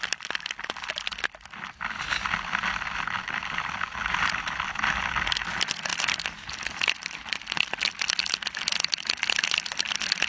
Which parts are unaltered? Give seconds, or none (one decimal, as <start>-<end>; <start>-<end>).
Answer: none